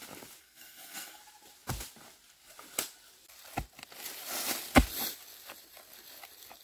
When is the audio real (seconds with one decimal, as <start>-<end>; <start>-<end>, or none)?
0.0-0.4; 1.2-6.6